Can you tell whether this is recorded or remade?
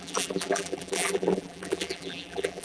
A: remade